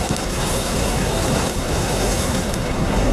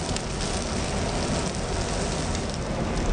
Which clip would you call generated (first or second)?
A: first